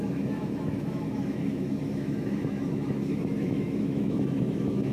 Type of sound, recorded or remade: remade